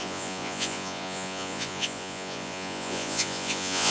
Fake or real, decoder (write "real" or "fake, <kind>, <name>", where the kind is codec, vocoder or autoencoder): fake, vocoder, Vocos